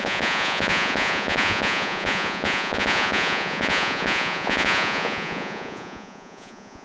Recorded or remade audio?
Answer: remade